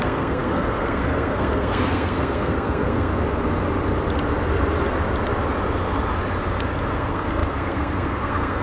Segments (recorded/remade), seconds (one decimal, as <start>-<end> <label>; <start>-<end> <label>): 0.0-3.1 remade; 3.1-6.9 recorded; 6.9-8.6 remade